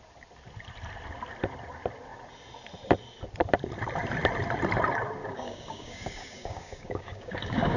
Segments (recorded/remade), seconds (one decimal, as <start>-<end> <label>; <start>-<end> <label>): 0.0-5.2 recorded; 5.2-7.8 remade

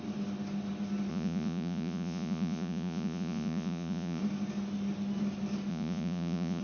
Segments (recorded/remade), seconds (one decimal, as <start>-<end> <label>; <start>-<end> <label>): 0.0-1.1 recorded; 1.1-4.2 remade; 4.2-5.7 recorded; 5.7-6.6 remade